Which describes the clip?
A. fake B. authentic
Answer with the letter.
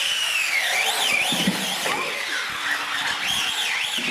B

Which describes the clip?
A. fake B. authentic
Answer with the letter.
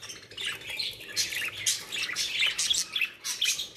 B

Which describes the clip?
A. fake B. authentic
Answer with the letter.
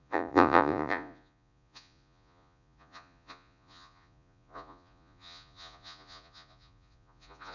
A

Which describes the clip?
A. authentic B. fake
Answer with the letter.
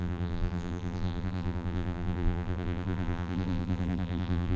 B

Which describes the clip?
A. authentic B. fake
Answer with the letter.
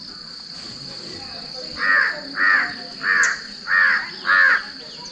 A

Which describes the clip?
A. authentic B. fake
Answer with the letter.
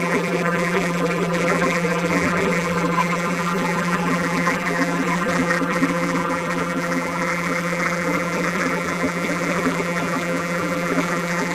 B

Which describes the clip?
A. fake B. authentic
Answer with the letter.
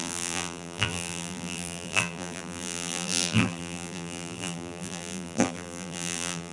A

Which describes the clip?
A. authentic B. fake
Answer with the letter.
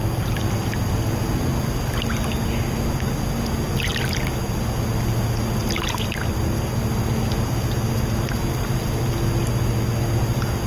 A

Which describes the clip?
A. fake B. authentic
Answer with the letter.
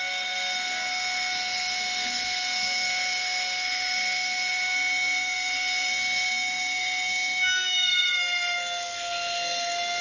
A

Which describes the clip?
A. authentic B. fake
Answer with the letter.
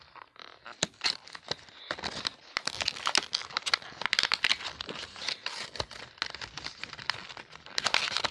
A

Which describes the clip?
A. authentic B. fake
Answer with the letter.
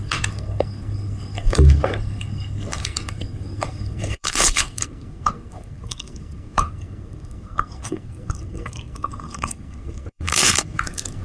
B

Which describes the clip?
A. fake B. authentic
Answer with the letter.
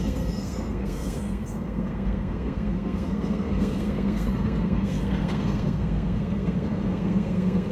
A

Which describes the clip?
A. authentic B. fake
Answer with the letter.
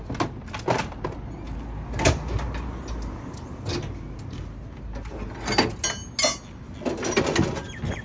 A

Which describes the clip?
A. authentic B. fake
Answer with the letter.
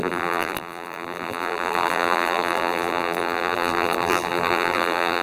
B